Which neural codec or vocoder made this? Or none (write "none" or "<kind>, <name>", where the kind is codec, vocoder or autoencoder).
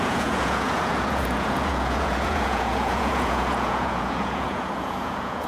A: vocoder, Vocos